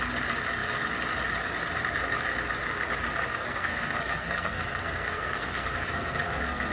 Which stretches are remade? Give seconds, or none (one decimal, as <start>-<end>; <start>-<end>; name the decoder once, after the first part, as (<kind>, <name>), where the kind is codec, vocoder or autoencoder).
3.3-6.7 (codec, SNAC)